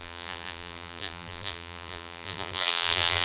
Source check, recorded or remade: remade